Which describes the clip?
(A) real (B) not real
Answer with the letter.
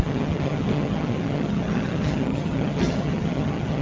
B